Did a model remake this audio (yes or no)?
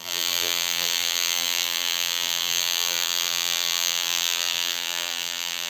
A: yes